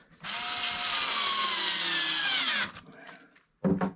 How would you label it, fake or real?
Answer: real